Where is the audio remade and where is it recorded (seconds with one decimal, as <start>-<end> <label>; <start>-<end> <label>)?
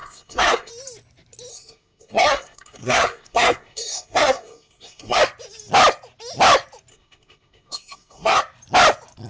0.0-0.7 remade; 0.7-1.5 recorded; 1.5-5.2 remade; 5.2-6.9 recorded; 6.9-8.4 remade; 8.4-9.3 recorded